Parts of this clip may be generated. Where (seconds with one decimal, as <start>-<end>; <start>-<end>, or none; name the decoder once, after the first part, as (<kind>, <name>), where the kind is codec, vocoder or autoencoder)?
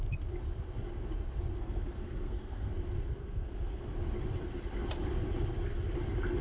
1.6-2.7 (codec, SNAC); 3.2-3.8